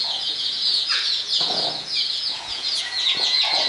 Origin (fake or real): fake